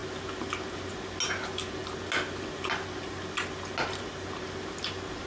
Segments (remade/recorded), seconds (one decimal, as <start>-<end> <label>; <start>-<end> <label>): 0.0-5.3 recorded